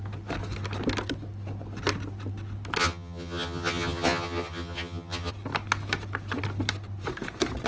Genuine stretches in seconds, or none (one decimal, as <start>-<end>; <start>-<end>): 0.0-2.8; 5.3-7.7